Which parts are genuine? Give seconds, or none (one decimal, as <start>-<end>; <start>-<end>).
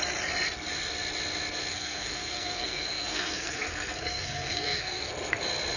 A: 0.0-1.7; 5.1-5.8